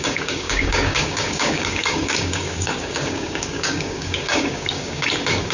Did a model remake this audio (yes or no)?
yes